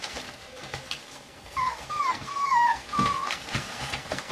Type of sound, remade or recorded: remade